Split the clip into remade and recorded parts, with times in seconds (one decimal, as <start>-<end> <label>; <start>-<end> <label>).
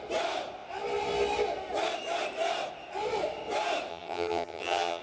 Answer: 0.0-3.9 recorded; 3.9-5.0 remade